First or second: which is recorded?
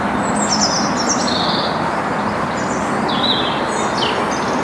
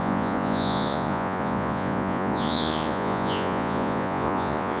first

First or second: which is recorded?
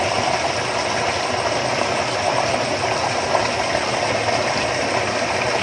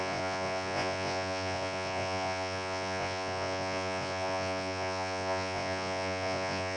first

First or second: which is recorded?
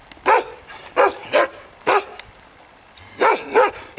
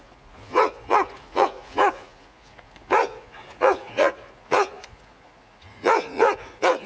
first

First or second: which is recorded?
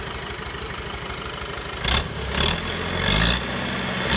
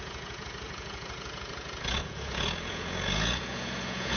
first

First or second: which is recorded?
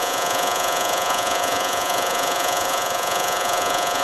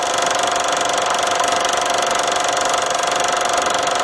second